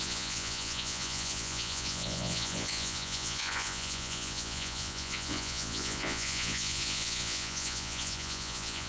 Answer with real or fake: fake